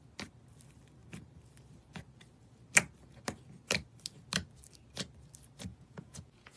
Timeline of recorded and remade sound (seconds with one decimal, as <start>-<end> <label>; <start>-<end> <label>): 0.0-5.7 recorded; 5.7-6.6 remade